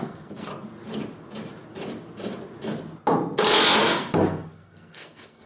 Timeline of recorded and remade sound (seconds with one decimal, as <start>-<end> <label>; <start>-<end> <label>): 0.0-0.5 remade; 0.5-3.8 recorded; 3.8-5.5 remade